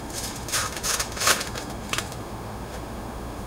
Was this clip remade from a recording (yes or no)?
yes